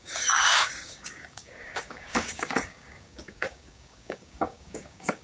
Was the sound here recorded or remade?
remade